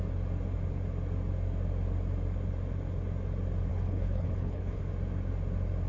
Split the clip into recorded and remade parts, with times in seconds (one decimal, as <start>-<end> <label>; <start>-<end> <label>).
0.0-3.7 recorded; 3.7-4.8 remade; 4.8-5.9 recorded